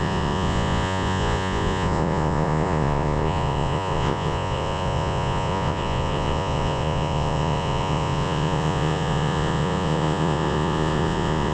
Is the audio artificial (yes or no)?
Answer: yes